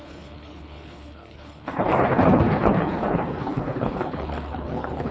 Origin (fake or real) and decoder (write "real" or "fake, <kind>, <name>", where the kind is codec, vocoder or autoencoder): fake, codec, HILCodec